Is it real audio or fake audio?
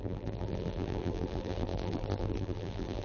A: fake